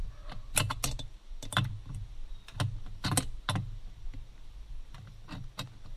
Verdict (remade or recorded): recorded